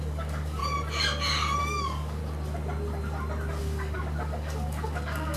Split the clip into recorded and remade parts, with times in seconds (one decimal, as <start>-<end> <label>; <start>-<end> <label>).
0.0-0.6 remade; 0.6-1.6 recorded; 1.6-2.2 remade; 2.2-3.6 recorded; 3.6-5.4 remade